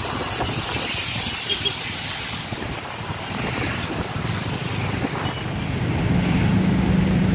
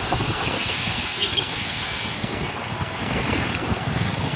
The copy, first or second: second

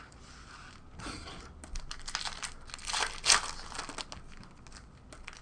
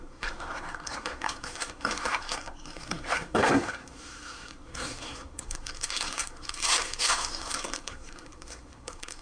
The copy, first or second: second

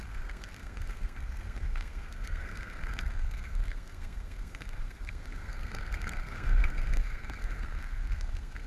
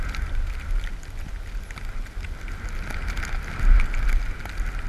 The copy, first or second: first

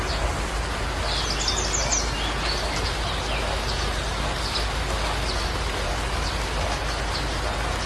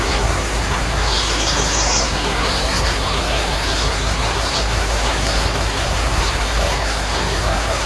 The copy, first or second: second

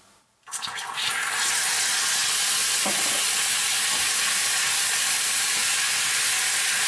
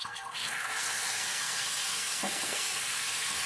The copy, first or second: second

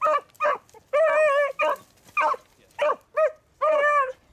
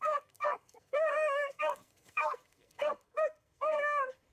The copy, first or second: second